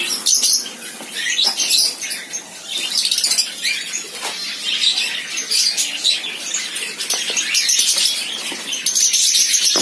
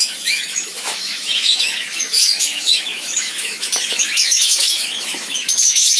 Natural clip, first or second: first